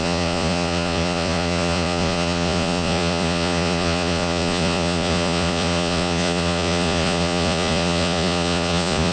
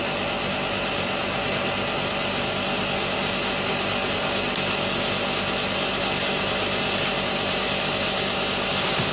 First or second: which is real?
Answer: second